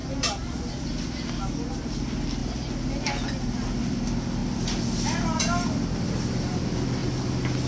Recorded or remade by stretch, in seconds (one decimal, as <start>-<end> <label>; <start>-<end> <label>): 0.0-7.7 recorded